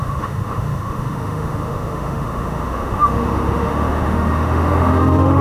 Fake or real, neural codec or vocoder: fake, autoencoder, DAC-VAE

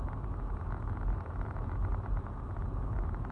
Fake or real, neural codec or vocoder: fake, autoencoder, DAC-VAE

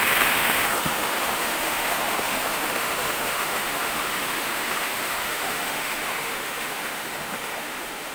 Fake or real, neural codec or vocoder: fake, autoencoder, DAC-VAE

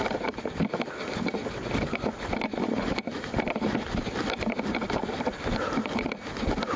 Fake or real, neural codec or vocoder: real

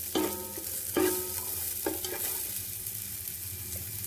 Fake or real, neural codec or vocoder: real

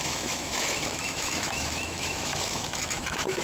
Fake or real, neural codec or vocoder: fake, autoencoder, DAC-VAE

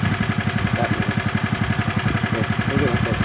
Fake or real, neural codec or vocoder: real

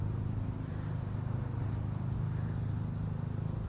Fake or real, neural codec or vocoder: real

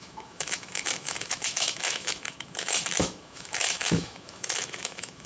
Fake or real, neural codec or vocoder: fake, autoencoder, DAC-VAE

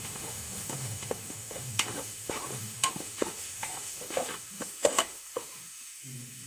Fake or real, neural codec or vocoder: fake, autoencoder, DAC-VAE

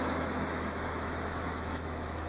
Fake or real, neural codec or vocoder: fake, autoencoder, DAC-VAE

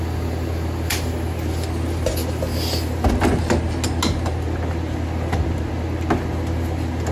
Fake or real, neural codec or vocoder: real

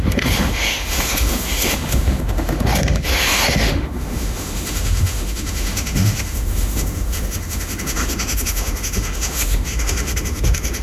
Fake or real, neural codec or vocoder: fake, autoencoder, DAC-VAE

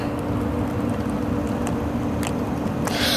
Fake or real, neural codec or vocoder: real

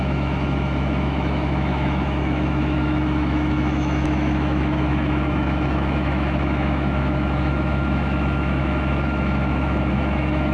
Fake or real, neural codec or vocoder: fake, autoencoder, DAC-VAE